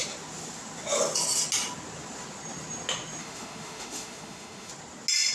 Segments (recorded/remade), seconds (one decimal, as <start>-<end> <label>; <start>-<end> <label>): 0.0-3.2 recorded; 3.2-4.7 remade; 4.7-5.3 recorded